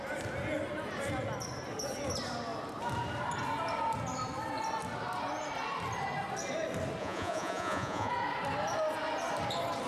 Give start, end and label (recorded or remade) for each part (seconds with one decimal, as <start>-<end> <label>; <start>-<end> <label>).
0.0-7.0 recorded; 7.0-8.1 remade; 8.1-9.9 recorded